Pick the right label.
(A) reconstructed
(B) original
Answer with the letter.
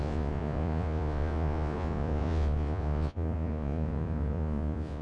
A